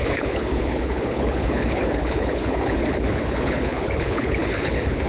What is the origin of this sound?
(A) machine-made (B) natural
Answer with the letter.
A